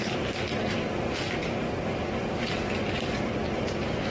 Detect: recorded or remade recorded